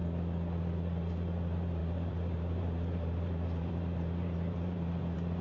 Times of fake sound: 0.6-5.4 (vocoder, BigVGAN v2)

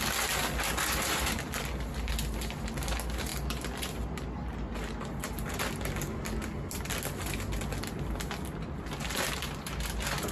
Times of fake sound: none

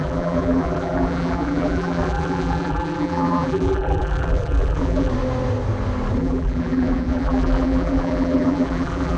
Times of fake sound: 0.0-5.1 (vocoder, BigVGAN v2); 6.2-9.2

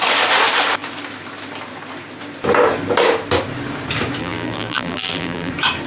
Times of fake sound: 4.2-5.5 (vocoder, BigVGAN v2)

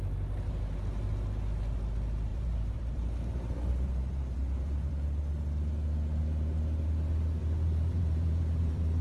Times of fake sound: 2.3-4.9 (vocoder, BigVGAN v2); 7.4-9.0